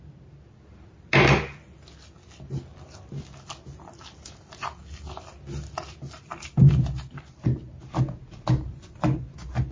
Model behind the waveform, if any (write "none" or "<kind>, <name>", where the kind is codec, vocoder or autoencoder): none